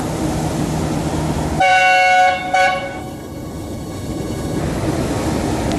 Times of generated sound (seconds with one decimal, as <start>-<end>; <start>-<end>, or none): 3.0-4.6

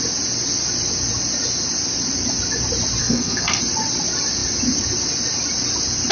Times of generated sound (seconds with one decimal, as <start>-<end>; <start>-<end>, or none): 3.0-3.6